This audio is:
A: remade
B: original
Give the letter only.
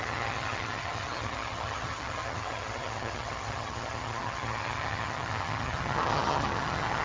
A